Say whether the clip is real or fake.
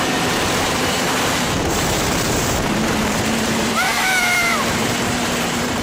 fake